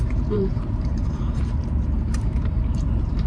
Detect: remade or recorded remade